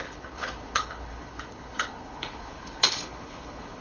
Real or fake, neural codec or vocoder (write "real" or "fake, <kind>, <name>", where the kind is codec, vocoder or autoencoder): fake, codec, HILCodec